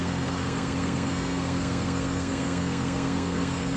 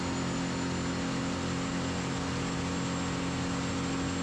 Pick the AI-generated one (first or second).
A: first